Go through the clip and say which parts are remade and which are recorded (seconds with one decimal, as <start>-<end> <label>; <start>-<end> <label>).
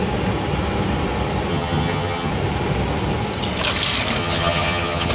0.0-1.5 recorded; 1.5-2.3 remade; 2.3-4.2 recorded; 4.2-5.1 remade